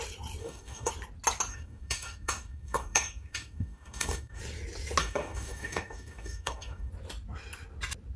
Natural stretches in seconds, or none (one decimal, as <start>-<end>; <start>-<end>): 0.0-0.4; 0.9-1.5; 4.4-5.0; 6.9-8.2